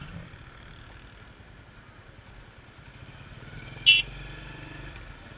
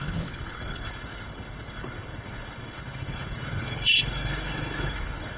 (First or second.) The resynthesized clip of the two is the second